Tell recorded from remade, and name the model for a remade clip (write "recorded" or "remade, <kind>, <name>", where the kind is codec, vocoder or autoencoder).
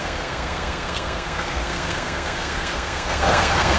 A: remade, codec, SNAC